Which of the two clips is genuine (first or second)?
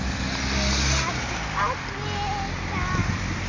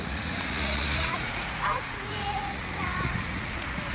first